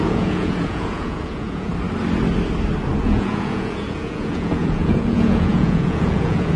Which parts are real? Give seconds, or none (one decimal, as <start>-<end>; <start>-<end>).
1.7-3.0